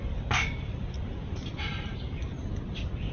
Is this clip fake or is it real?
real